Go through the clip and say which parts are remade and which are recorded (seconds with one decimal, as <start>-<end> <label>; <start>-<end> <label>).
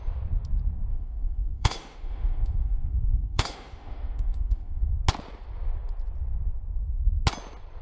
0.0-0.9 recorded; 0.9-4.9 remade; 4.9-7.8 recorded